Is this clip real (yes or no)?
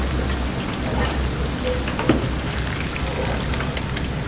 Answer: yes